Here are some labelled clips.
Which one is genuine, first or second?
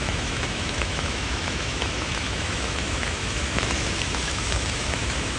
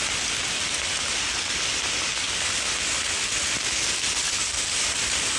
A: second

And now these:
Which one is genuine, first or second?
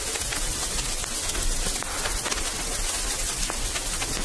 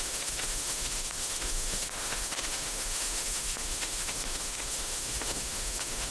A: first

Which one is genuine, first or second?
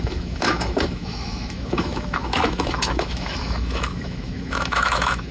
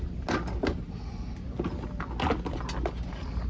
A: second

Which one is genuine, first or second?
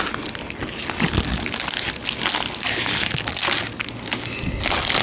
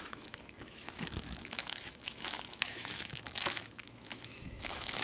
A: first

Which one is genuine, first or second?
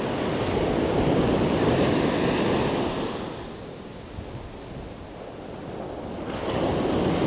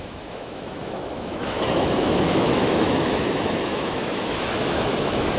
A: first